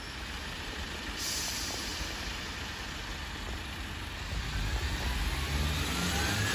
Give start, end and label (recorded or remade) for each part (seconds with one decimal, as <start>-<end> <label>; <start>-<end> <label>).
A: 0.0-0.9 remade; 0.9-1.5 recorded; 1.5-1.9 remade; 1.9-5.8 recorded; 5.8-6.5 remade